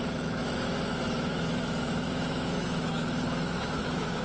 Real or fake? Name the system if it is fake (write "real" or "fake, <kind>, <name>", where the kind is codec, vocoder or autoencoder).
fake, autoencoder, DAC-VAE